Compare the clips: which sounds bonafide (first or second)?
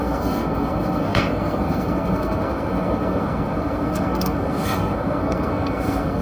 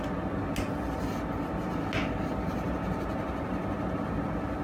second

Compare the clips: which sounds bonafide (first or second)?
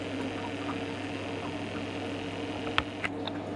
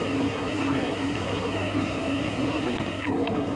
first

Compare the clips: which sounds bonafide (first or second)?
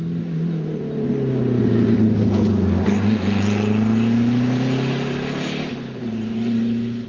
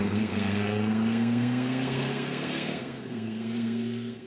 first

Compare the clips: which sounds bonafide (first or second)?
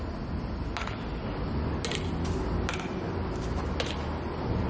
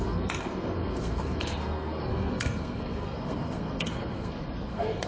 first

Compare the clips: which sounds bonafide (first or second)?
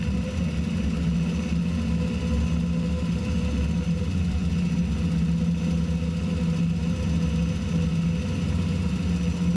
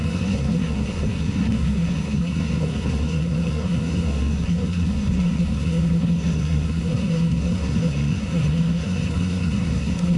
first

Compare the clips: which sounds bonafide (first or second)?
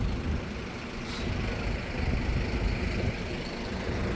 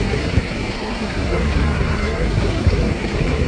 first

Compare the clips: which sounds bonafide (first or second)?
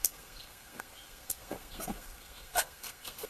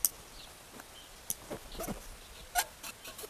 second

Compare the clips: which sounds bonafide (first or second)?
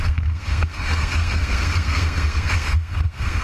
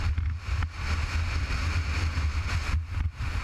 second